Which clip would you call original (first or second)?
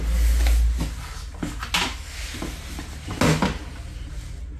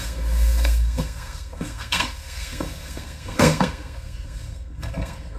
first